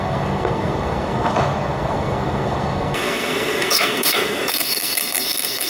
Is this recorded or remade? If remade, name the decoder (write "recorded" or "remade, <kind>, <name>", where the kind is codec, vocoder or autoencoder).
remade, codec, SNAC